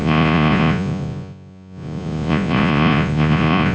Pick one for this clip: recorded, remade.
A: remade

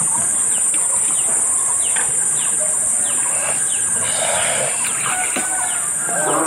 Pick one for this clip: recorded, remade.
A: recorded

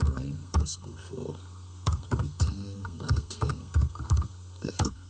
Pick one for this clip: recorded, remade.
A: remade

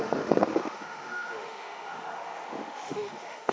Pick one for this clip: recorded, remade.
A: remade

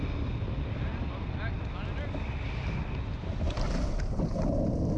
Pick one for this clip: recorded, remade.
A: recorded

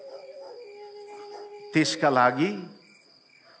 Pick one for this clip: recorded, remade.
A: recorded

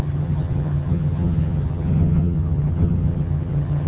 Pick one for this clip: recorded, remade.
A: remade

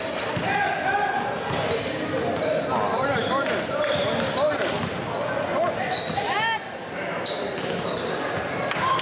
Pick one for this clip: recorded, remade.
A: recorded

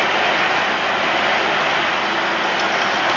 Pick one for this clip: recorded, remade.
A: recorded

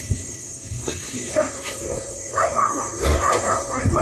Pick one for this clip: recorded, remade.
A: remade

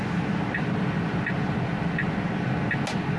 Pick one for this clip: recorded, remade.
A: recorded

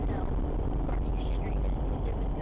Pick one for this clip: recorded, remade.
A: recorded